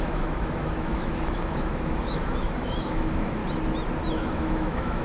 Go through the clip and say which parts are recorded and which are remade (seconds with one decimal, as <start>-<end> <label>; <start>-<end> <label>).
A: 0.0-3.4 remade; 3.4-4.1 recorded; 4.1-5.0 remade

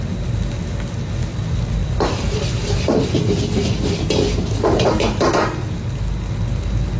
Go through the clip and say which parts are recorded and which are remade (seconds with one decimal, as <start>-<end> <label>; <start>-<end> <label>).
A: 0.0-1.3 recorded; 1.3-3.0 remade; 3.0-7.0 recorded

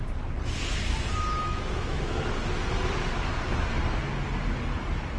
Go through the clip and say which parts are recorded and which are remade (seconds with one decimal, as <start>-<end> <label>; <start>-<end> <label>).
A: 0.0-1.4 recorded; 1.4-2.2 remade; 2.2-5.2 recorded

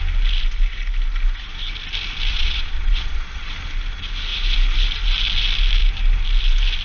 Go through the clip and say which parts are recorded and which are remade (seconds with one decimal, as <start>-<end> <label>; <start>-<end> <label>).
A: 0.0-2.3 recorded; 2.3-3.5 remade; 3.5-6.8 recorded

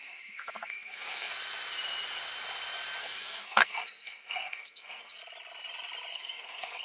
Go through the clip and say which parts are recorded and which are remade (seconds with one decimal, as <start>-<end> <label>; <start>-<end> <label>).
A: 0.0-1.3 remade; 1.3-3.0 recorded; 3.0-5.2 remade; 5.2-6.1 recorded; 6.1-6.8 remade

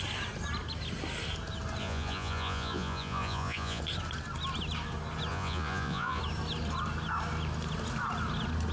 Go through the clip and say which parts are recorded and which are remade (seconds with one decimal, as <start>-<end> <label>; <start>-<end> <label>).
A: 0.0-1.8 recorded; 1.8-3.8 remade; 3.8-5.3 recorded; 5.3-6.2 remade; 6.2-8.7 recorded

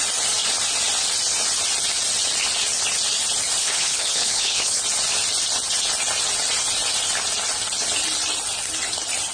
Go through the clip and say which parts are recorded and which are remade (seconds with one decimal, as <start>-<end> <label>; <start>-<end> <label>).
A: 0.0-3.6 recorded; 3.6-4.8 remade; 4.8-9.3 recorded

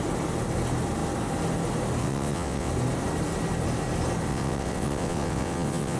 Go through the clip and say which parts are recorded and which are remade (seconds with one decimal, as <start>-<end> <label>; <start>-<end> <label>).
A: 0.0-2.0 recorded; 2.0-2.7 remade; 2.7-4.3 recorded; 4.3-6.0 remade